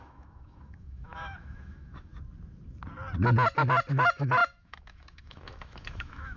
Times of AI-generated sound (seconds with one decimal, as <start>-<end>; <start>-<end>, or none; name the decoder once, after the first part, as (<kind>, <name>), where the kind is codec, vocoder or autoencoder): 0.0-2.1 (autoencoder, DAC-VAE); 3.9-6.4